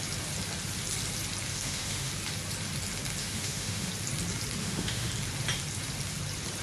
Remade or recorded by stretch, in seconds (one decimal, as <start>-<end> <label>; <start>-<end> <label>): 0.0-1.5 recorded; 1.5-2.1 remade; 2.1-3.2 recorded; 3.2-3.9 remade; 3.9-4.6 recorded; 4.6-5.1 remade; 5.1-6.6 recorded